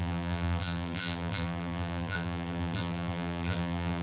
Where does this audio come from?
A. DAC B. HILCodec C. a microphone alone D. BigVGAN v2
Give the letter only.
D